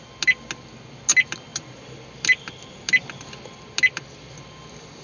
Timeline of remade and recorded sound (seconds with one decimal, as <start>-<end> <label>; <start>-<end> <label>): 0.0-5.0 recorded